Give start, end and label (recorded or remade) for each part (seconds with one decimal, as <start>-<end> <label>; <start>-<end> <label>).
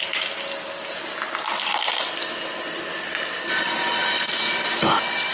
0.0-5.3 recorded